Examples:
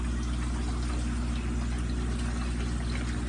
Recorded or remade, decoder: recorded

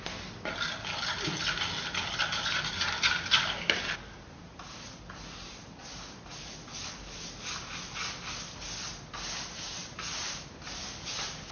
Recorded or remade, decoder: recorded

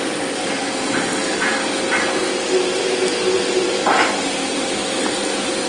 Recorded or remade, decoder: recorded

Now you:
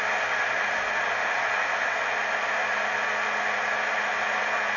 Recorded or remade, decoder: recorded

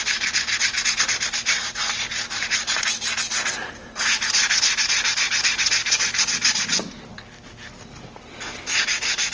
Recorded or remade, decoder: recorded